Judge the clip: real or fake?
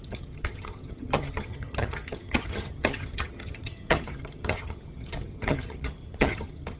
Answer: fake